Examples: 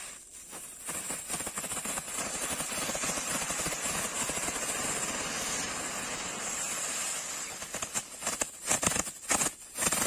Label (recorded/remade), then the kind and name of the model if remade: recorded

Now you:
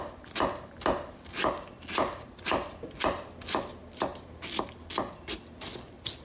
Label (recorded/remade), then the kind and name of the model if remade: recorded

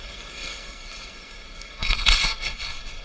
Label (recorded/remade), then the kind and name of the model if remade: remade, codec, SNAC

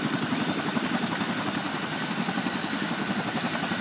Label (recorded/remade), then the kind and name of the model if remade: remade, vocoder, BigVGAN v2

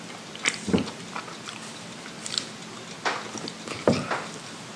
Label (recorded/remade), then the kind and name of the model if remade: recorded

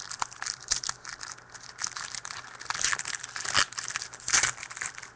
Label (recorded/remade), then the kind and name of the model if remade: recorded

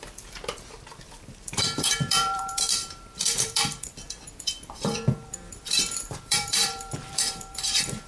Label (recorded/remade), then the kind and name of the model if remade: remade, vocoder, BigVGAN v2